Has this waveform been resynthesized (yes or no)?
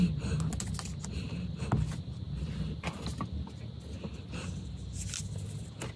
no